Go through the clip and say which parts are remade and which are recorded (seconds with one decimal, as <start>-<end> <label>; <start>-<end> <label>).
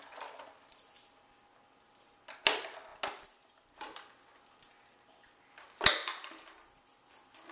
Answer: 0.0-7.5 recorded